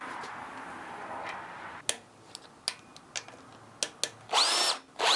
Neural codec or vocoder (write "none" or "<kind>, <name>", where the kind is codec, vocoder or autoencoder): none